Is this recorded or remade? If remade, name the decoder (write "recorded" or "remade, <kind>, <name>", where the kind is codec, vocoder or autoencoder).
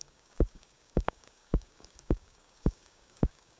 remade, codec, DAC